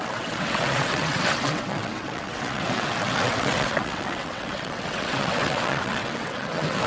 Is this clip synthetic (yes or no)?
yes